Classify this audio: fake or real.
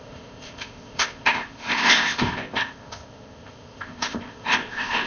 fake